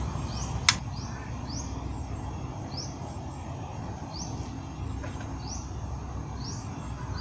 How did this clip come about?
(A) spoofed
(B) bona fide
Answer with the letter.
B